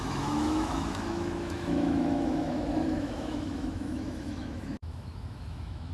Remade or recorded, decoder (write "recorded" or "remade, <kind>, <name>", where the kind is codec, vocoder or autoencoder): remade, autoencoder, DAC-VAE